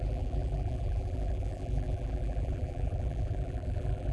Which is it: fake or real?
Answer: fake